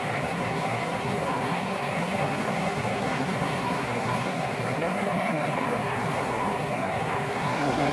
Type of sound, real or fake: fake